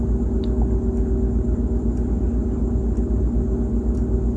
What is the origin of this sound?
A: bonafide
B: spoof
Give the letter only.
A